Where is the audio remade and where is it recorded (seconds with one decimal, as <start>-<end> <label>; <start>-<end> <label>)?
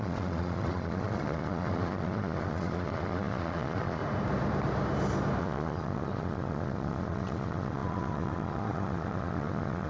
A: 0.0-4.0 remade; 4.0-5.4 recorded; 5.4-9.9 remade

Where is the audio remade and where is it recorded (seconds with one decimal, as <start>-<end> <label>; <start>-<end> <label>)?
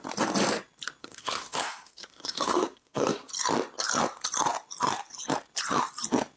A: 0.0-1.0 recorded; 1.0-3.3 remade; 3.3-6.4 recorded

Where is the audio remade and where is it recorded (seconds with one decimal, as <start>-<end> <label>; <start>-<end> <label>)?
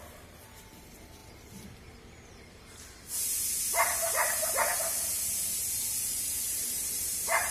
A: 0.0-6.5 recorded; 6.5-7.5 remade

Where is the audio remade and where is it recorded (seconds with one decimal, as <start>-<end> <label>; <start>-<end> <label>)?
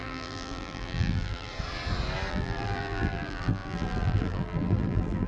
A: 0.0-1.5 remade; 1.5-2.3 recorded; 2.3-5.3 remade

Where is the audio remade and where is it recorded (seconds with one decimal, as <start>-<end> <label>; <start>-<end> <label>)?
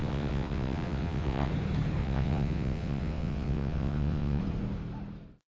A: 0.0-1.5 remade; 1.5-2.0 recorded; 2.0-4.4 remade; 4.4-5.5 recorded